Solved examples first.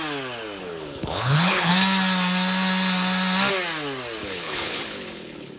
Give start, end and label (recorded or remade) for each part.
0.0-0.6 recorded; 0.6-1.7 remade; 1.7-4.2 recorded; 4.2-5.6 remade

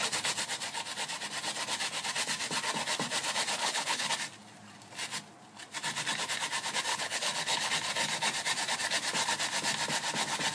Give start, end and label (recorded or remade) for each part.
0.0-3.6 recorded; 3.6-4.1 remade; 4.1-6.9 recorded; 6.9-7.7 remade; 7.7-10.5 recorded

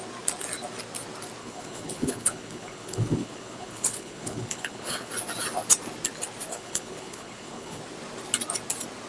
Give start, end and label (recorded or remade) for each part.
0.0-1.4 recorded; 1.4-5.1 remade; 5.1-6.5 recorded; 6.5-7.8 remade; 7.8-9.1 recorded

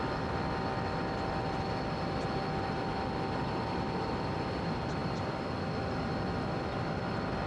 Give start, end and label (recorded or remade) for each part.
0.0-7.5 recorded

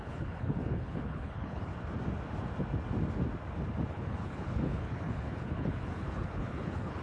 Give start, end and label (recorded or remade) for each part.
0.0-1.7 remade; 1.7-3.9 recorded; 3.9-7.0 remade

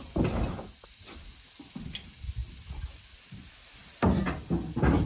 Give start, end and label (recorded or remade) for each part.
0.0-5.1 recorded

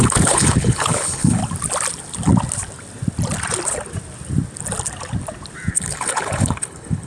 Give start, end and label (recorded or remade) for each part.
0.0-1.4 remade; 1.4-5.7 recorded; 5.7-7.1 remade

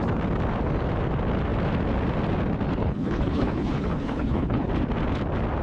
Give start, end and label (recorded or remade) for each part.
0.0-2.8 recorded; 2.8-4.7 remade; 4.7-5.6 recorded